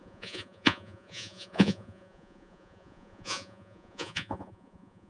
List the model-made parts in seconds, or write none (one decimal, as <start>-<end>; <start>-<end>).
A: 0.0-5.1

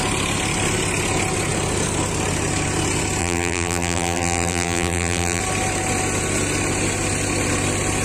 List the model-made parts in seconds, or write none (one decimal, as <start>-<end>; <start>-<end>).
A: 3.2-5.4

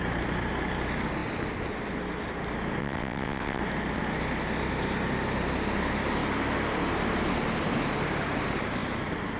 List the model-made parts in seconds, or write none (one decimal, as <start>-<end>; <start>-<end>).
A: 2.8-3.6

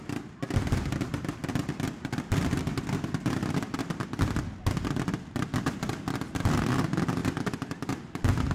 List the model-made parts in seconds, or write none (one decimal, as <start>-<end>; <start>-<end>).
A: 7.2-7.9

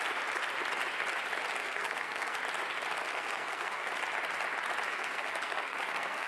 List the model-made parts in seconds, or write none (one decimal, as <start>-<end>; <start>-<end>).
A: 1.6-2.4; 3.1-3.9; 4.9-6.3